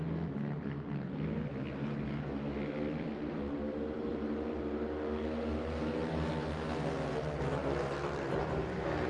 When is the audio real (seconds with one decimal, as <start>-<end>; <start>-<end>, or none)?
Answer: 0.0-4.1; 4.6-9.1